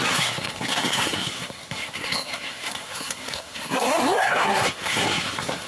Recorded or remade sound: remade